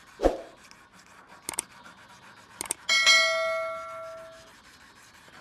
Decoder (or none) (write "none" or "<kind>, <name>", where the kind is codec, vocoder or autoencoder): none